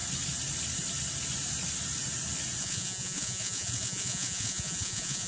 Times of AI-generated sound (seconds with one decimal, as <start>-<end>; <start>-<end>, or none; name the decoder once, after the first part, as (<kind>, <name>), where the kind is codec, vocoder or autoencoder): 2.6-5.3 (vocoder, Vocos)